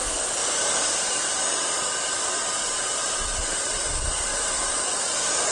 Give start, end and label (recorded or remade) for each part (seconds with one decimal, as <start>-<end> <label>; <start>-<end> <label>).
0.0-0.4 recorded; 0.4-1.4 remade; 1.4-2.6 recorded; 2.6-3.7 remade; 3.7-4.3 recorded; 4.3-5.5 remade